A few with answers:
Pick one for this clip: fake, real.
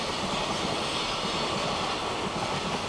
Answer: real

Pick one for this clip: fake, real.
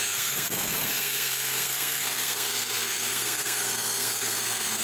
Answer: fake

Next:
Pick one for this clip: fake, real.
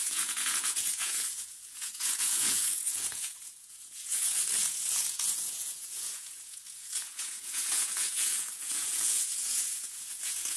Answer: fake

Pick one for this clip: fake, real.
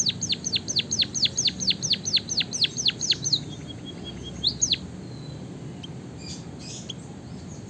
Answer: real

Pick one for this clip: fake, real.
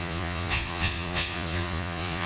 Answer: fake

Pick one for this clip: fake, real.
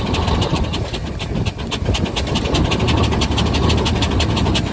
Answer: real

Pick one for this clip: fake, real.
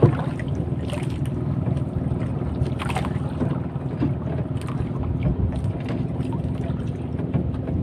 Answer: real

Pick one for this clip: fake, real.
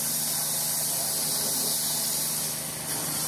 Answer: real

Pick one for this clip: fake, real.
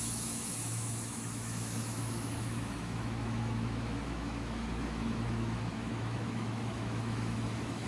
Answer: fake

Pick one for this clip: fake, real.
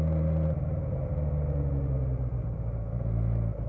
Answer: real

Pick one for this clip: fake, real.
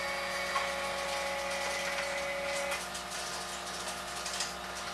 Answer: real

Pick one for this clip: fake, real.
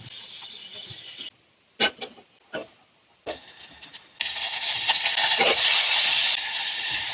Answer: real